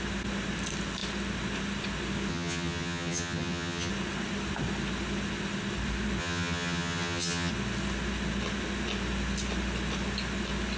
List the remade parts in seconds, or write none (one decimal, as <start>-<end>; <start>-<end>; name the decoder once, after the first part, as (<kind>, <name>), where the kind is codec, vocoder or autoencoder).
2.3-3.9 (vocoder, HiFi-GAN); 6.2-7.5